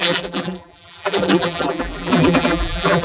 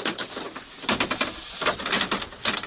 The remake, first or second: first